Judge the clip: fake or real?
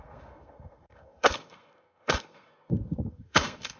fake